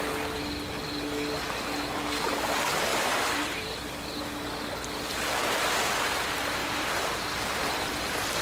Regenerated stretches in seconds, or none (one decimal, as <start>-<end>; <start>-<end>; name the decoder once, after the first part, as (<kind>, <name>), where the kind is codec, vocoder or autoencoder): 2.9-3.8 (vocoder, BigVGAN v2); 6.6-7.2